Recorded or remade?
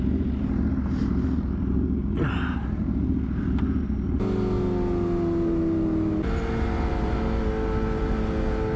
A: recorded